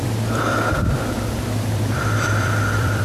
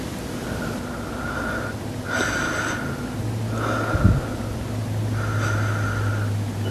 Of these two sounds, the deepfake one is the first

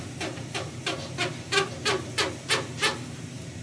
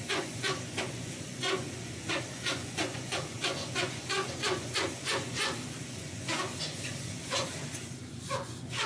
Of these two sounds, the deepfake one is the second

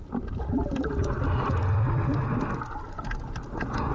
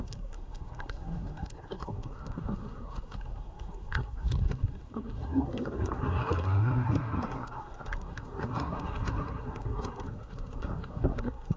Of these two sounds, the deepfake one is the second